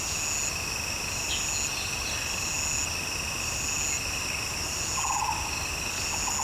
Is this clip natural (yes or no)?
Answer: yes